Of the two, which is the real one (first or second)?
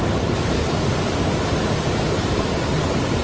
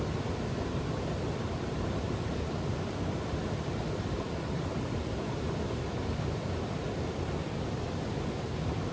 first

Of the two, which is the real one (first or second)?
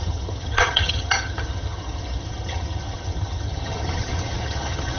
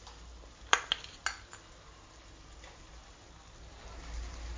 second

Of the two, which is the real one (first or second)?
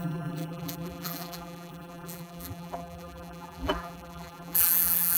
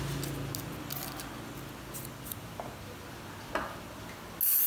second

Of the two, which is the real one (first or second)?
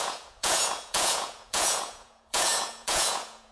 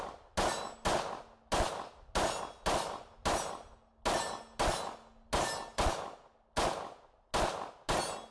second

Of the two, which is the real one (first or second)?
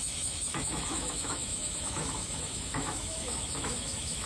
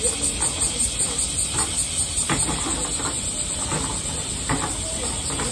second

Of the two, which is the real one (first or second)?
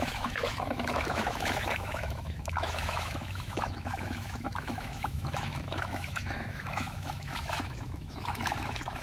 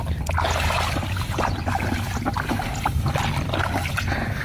second